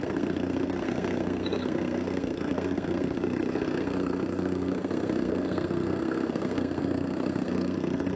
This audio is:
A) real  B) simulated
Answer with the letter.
B